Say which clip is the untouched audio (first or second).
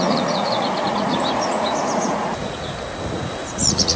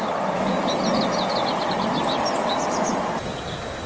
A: second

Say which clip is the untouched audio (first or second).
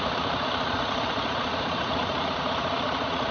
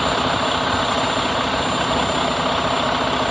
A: second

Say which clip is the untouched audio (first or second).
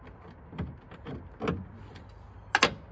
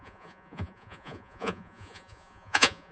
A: first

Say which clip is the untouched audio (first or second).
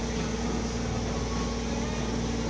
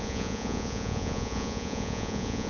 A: first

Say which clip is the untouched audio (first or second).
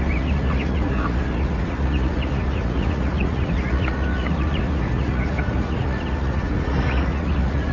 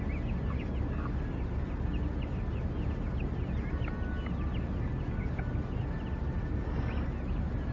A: second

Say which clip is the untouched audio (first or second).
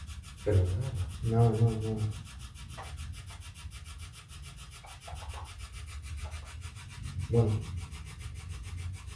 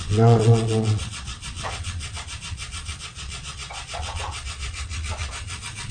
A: first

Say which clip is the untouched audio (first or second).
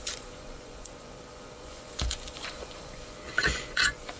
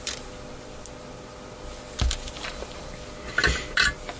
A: second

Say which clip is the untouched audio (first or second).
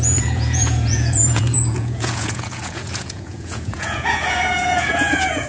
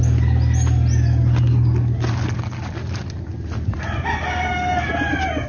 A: second